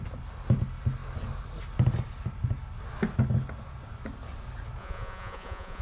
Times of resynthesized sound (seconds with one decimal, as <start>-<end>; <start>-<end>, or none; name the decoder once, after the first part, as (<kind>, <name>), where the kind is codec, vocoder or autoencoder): 4.8-5.8 (vocoder, Vocos)